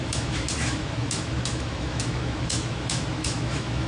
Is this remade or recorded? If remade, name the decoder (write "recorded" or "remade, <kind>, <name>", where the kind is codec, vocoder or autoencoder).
remade, autoencoder, DAC-VAE